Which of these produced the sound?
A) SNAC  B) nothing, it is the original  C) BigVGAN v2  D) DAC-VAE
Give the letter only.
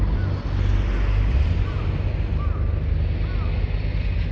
B